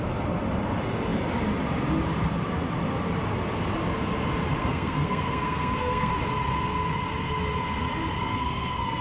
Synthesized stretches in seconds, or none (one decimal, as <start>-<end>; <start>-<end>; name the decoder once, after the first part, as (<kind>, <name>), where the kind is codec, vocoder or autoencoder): 4.6-6.1 (codec, SNAC); 8.2-9.0